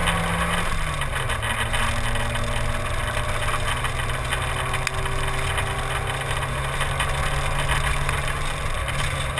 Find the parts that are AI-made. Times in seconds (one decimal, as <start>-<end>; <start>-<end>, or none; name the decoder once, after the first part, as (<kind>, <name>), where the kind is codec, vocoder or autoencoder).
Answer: none